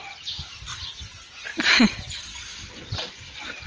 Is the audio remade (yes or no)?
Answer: no